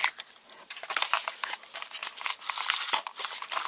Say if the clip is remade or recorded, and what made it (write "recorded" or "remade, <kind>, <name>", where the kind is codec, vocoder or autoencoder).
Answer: recorded